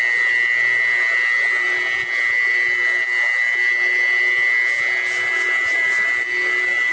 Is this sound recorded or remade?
recorded